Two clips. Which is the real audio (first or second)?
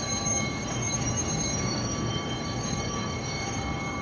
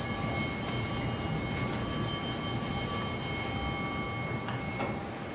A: second